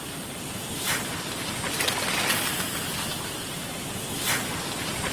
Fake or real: real